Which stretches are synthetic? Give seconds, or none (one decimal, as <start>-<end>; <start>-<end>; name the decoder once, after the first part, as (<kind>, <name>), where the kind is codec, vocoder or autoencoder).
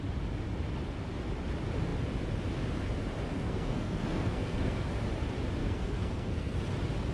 3.3-4.9 (codec, SNAC); 5.6-6.6